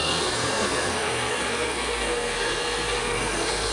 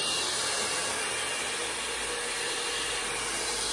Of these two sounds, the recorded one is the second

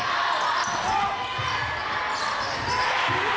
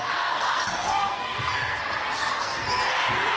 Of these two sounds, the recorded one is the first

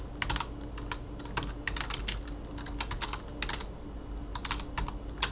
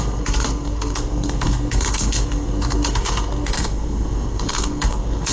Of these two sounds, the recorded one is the first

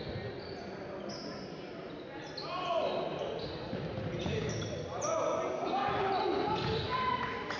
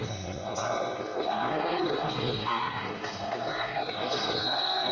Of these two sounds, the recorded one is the first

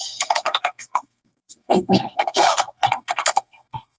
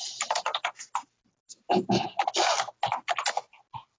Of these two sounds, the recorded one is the second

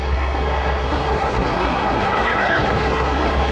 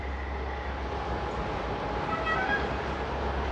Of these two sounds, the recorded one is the second